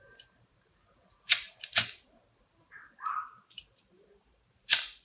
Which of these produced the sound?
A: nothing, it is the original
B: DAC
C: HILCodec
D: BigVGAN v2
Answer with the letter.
D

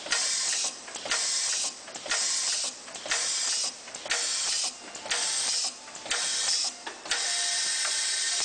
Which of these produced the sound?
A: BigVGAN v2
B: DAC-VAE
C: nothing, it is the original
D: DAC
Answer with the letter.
C